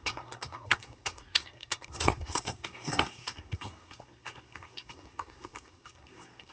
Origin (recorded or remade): remade